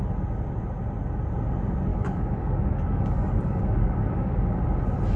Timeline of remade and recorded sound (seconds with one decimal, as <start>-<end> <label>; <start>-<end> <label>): 0.0-1.9 recorded; 1.9-4.6 remade; 4.6-5.2 recorded